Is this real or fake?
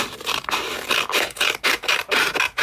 fake